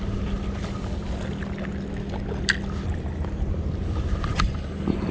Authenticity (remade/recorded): recorded